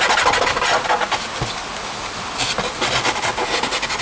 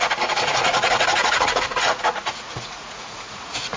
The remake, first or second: second